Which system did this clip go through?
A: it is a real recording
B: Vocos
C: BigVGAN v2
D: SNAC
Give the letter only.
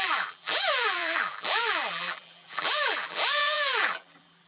C